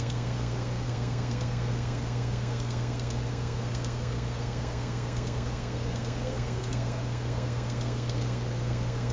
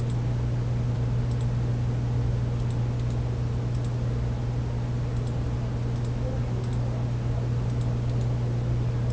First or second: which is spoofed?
first